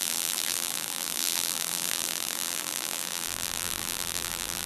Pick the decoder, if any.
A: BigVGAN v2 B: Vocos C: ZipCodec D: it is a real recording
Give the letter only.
A